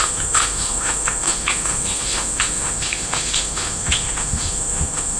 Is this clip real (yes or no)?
no